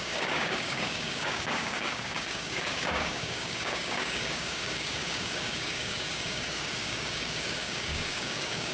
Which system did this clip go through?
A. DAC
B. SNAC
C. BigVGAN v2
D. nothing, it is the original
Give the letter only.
A